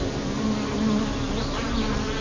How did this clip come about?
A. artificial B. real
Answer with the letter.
B